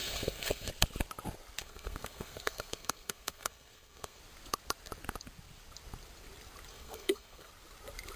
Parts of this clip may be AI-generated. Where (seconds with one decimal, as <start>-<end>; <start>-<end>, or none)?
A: 0.0-0.7; 1.6-4.2; 6.7-7.5